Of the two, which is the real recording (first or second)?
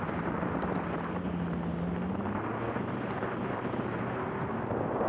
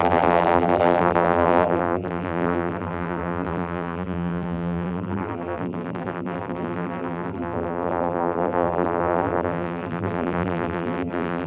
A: first